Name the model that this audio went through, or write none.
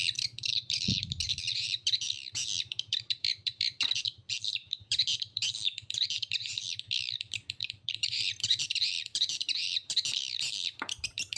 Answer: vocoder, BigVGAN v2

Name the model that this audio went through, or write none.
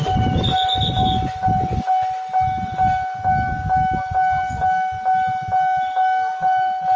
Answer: none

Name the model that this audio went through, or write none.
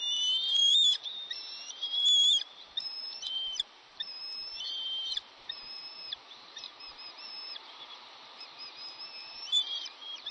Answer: vocoder, BigVGAN v2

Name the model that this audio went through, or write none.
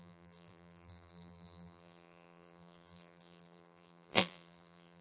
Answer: vocoder, BigVGAN v2